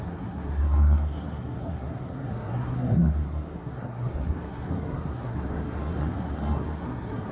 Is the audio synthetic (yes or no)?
yes